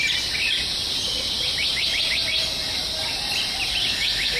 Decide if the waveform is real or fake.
real